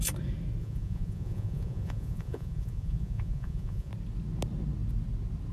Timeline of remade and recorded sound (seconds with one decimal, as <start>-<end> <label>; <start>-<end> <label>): 0.0-0.6 recorded; 0.6-3.9 remade; 3.9-5.5 recorded